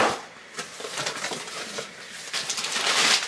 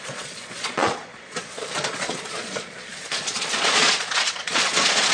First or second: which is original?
first